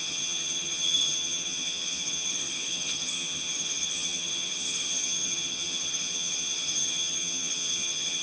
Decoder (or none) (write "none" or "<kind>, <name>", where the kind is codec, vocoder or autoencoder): vocoder, HiFi-GAN